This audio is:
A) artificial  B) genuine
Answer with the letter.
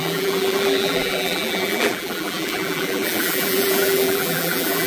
A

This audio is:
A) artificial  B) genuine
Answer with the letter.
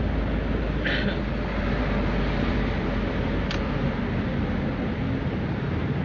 B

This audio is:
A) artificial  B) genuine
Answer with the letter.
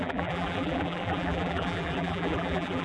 A